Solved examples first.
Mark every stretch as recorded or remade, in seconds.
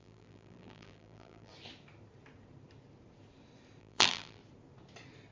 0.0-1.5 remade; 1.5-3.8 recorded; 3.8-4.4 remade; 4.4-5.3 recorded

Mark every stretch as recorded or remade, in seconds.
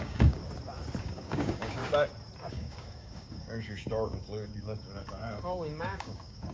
0.0-0.4 remade; 0.4-1.0 recorded; 1.0-1.8 remade; 1.8-2.5 recorded; 2.5-6.5 remade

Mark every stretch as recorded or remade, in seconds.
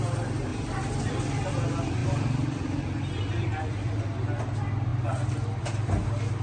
0.0-0.5 recorded; 0.5-1.5 remade; 1.5-2.0 recorded; 2.0-4.0 remade; 4.0-6.4 recorded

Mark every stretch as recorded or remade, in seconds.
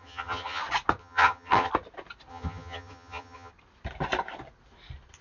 0.0-0.6 remade; 0.6-1.0 recorded; 1.0-1.7 remade; 1.7-2.3 recorded; 2.3-3.5 remade; 3.5-5.2 recorded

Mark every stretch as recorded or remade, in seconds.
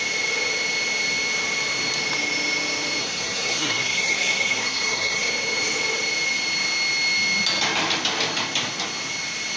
0.0-3.0 recorded; 3.0-5.3 remade; 5.3-9.6 recorded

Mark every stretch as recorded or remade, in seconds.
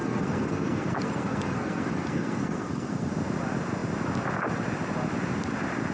0.0-3.1 remade; 3.1-5.9 recorded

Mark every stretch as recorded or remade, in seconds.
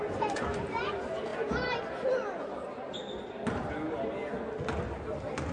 0.0-5.5 recorded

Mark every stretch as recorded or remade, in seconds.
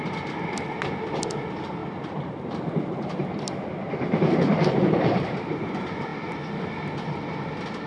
0.0-1.8 recorded; 1.8-5.3 remade; 5.3-7.9 recorded